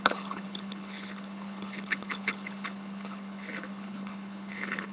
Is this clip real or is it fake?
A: fake